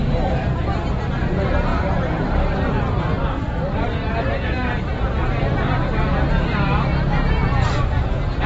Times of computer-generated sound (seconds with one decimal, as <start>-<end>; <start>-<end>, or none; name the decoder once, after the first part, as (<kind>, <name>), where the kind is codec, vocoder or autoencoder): none